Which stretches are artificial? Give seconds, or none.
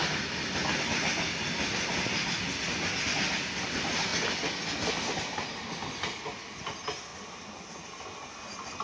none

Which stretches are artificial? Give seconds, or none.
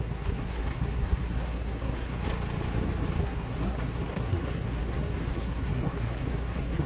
0.0-2.2 (codec, SNAC); 3.2-6.9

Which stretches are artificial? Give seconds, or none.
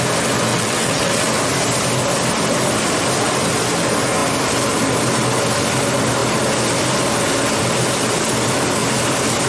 0.5-1.3 (vocoder, WaveNeXt)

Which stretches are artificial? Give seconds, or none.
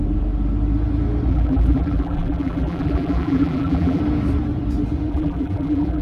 1.3-4.0 (vocoder, BigVGAN v2); 5.1-6.0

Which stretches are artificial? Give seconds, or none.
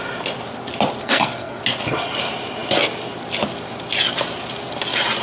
1.0-1.6 (codec, SNAC)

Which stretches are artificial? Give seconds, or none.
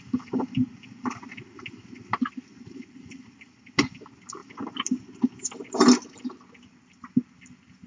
none